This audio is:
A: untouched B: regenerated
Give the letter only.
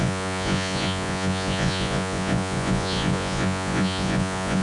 B